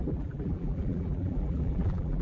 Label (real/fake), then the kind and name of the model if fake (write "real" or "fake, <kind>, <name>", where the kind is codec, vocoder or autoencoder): fake, vocoder, BigVGAN v2